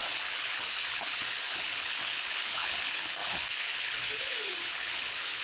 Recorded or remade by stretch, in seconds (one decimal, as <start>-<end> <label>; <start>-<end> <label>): 0.0-5.4 remade

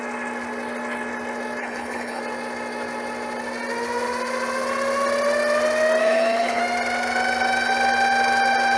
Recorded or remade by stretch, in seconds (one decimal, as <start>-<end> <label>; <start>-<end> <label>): 0.0-1.6 recorded; 1.6-2.2 remade; 2.2-6.0 recorded; 6.0-6.6 remade; 6.6-8.8 recorded

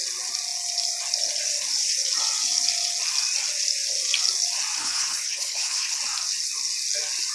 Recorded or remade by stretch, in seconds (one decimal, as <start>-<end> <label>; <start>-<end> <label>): 0.0-4.8 recorded; 4.8-6.0 remade; 6.0-7.3 recorded